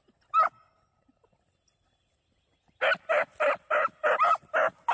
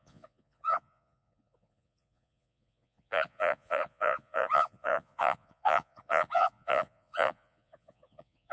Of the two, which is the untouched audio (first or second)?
first